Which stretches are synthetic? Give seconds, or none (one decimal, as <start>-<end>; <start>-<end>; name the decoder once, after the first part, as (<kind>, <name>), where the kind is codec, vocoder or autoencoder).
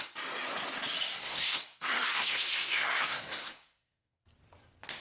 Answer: 1.2-4.2 (codec, SNAC)